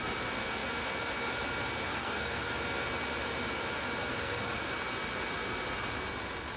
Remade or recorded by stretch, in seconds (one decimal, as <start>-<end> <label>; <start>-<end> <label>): 0.0-1.9 recorded; 1.9-2.5 remade; 2.5-4.1 recorded; 4.1-4.7 remade; 4.7-6.6 recorded